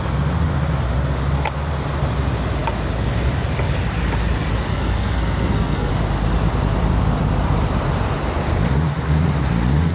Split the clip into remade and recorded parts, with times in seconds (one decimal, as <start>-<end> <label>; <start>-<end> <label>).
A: 0.0-4.7 recorded; 4.7-5.9 remade; 5.9-9.9 recorded